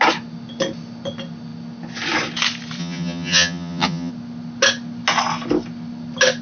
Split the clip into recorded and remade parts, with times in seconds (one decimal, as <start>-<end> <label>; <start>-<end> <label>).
0.0-2.8 recorded; 2.8-4.1 remade; 4.1-6.4 recorded

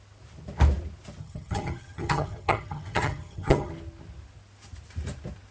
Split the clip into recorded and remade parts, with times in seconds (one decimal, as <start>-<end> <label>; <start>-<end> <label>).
0.0-1.2 recorded; 1.2-3.7 remade; 3.7-5.5 recorded

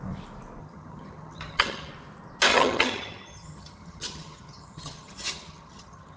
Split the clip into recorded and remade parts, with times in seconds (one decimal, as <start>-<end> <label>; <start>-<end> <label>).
0.0-0.6 recorded; 0.6-1.9 remade; 1.9-2.5 recorded; 2.5-6.2 remade

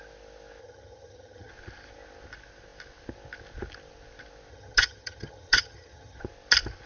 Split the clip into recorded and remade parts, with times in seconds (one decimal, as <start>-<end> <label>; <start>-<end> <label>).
0.0-0.6 recorded; 0.6-1.5 remade; 1.5-4.5 recorded; 4.5-6.2 remade; 6.2-6.9 recorded